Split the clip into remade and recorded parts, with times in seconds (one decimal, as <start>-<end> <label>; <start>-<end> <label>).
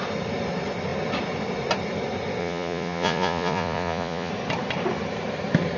0.0-2.4 recorded; 2.4-4.3 remade; 4.3-5.8 recorded